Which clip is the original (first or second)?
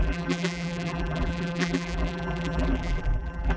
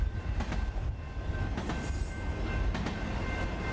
second